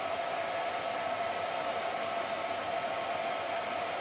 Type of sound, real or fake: real